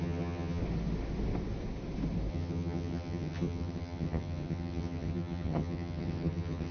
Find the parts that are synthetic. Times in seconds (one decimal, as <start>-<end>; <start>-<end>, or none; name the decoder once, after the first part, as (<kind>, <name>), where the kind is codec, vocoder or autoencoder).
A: 0.0-0.6 (vocoder, HiFi-GAN); 2.3-6.7